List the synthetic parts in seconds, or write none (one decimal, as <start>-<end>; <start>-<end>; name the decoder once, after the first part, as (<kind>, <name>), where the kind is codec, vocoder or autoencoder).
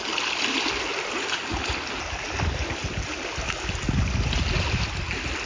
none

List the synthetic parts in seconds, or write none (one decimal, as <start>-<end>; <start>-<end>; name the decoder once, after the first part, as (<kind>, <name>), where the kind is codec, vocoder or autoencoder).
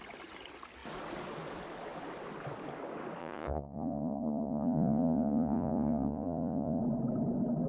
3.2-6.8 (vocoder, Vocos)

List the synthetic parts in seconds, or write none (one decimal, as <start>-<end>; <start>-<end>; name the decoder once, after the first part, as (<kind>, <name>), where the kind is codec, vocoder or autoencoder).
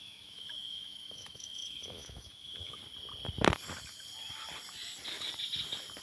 0.0-2.8 (autoencoder, DAC-VAE)